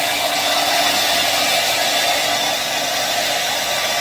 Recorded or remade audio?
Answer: recorded